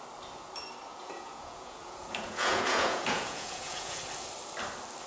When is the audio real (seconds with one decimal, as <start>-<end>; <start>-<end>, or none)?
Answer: 0.0-0.9; 4.0-5.1